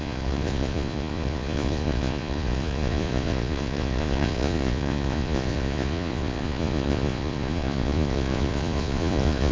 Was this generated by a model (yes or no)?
yes